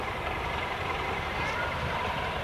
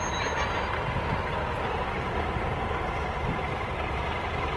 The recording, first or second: second